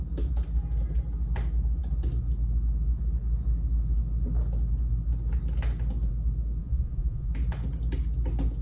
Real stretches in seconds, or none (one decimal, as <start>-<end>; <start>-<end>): 0.0-6.6; 7.3-8.6